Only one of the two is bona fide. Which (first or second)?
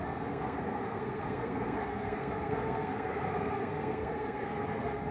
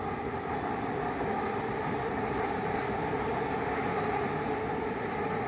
second